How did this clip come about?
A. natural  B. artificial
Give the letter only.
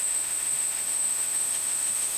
B